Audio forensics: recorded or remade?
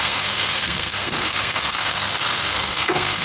remade